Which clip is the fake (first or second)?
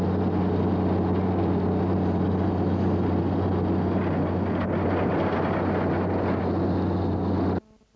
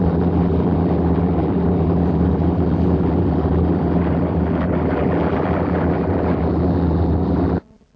second